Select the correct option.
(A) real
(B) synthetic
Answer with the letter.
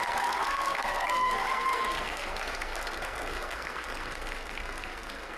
B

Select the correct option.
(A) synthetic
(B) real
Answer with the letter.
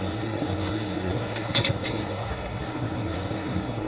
A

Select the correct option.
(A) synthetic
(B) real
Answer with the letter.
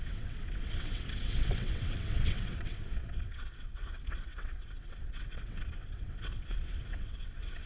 A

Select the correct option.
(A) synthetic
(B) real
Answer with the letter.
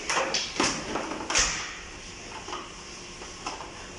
B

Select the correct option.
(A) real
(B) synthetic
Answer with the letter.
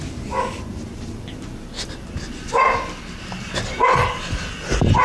A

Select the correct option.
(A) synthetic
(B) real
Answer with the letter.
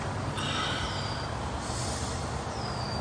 B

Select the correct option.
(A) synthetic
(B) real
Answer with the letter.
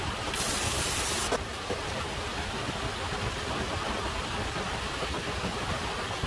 B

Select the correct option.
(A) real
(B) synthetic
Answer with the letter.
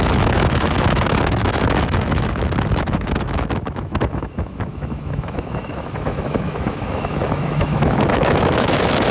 B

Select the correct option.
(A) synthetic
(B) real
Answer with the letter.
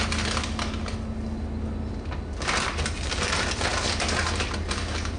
B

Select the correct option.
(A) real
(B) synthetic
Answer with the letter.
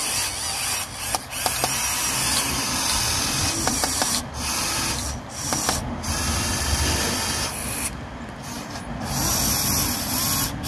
A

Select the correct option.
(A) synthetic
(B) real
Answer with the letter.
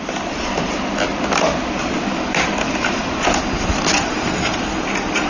B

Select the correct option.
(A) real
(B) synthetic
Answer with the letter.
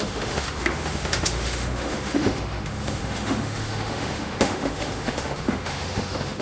B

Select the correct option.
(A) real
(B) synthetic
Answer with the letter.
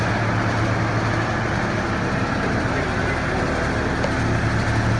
A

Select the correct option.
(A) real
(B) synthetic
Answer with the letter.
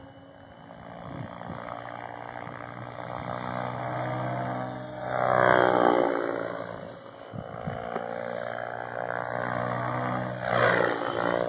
A